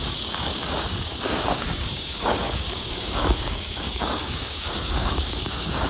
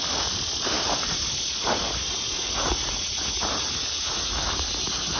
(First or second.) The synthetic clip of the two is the first